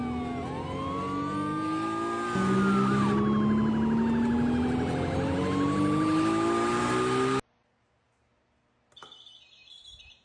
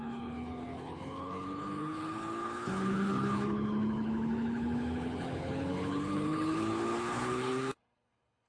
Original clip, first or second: first